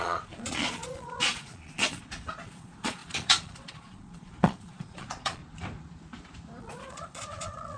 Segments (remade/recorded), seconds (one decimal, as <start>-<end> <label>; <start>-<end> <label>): 0.0-5.4 remade; 5.4-6.6 recorded; 6.6-7.8 remade